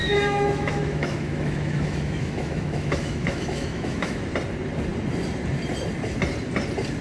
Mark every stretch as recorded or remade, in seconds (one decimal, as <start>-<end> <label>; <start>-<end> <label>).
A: 0.0-4.2 remade; 4.2-7.0 recorded